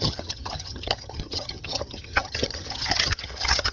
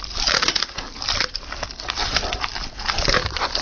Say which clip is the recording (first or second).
second